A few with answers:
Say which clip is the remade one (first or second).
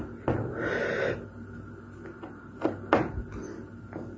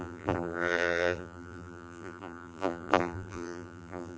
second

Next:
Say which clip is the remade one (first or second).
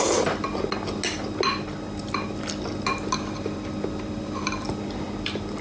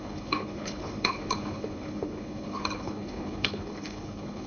second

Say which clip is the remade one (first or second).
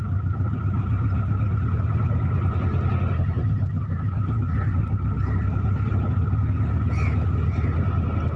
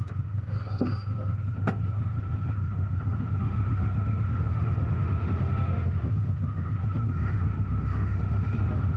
second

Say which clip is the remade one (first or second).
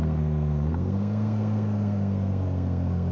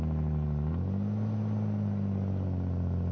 first